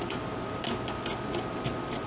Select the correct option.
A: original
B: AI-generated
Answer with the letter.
A